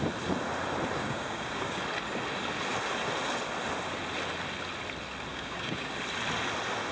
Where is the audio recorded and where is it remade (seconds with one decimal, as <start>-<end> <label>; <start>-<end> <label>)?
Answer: 0.0-1.0 recorded; 1.0-1.8 remade; 1.8-5.3 recorded; 5.3-5.9 remade; 5.9-6.9 recorded